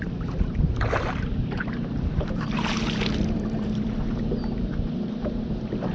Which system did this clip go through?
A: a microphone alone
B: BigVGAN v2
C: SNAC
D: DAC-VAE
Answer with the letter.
B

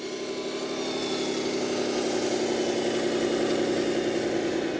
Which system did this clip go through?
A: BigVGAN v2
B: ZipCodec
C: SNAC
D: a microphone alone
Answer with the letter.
D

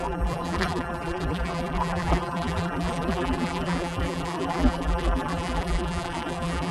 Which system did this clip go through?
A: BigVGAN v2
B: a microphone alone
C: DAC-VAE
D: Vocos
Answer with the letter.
A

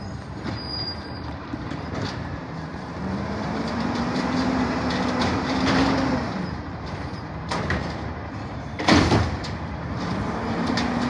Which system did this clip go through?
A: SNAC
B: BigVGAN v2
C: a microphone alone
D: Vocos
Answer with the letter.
B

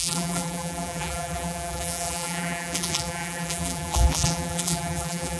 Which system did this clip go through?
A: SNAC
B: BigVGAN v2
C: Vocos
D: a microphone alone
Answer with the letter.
B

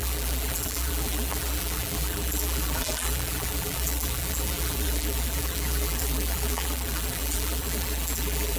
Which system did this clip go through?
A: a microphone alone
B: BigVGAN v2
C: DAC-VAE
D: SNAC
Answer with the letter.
B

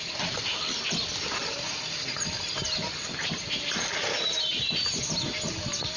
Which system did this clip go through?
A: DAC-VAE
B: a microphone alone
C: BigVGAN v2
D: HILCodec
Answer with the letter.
B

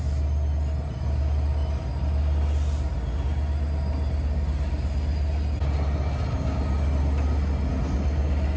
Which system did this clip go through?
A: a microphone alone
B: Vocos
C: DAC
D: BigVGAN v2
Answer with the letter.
A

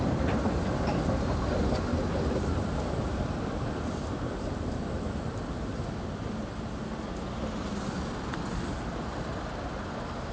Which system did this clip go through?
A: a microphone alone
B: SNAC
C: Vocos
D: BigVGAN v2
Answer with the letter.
A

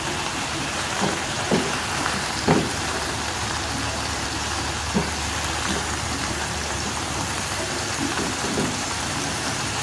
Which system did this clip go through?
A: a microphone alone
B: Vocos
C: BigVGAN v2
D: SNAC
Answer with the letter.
C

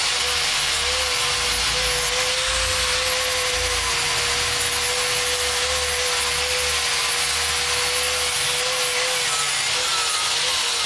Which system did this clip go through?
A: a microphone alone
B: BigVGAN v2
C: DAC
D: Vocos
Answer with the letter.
A